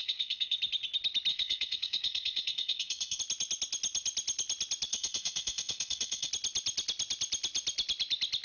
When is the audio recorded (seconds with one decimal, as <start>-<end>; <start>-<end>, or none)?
0.6-1.3; 3.2-4.9; 6.3-8.4